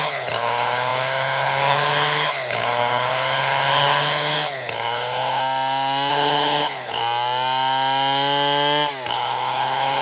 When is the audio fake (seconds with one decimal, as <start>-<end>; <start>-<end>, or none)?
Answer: 0.0-5.4; 6.1-7.0; 9.1-10.0